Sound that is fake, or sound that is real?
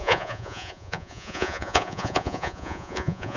fake